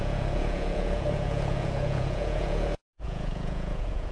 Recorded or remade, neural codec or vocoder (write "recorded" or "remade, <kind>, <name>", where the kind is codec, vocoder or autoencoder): remade, vocoder, Vocos